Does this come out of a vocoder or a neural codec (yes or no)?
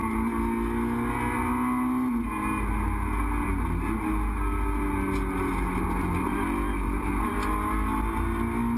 no